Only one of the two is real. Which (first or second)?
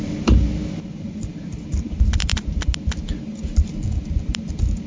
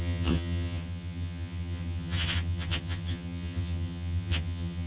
first